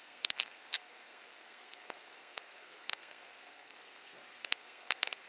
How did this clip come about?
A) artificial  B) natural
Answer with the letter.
A